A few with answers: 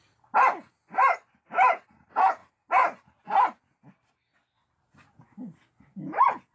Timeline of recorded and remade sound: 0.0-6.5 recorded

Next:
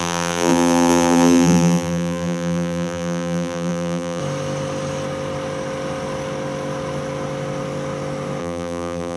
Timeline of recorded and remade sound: 0.0-4.2 remade; 4.2-8.4 recorded; 8.4-9.2 remade

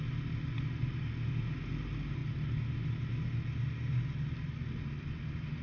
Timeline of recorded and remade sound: 0.0-5.6 recorded

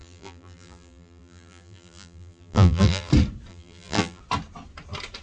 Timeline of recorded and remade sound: 0.0-3.1 remade; 3.1-3.5 recorded; 3.5-4.2 remade; 4.2-5.2 recorded

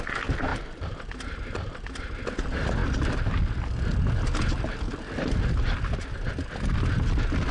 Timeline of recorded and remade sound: 0.0-0.5 recorded; 0.5-2.0 remade; 2.0-7.5 recorded

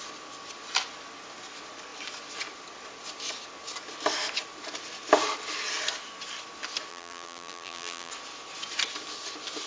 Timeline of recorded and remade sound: 0.0-6.9 recorded; 6.9-8.1 remade; 8.1-9.7 recorded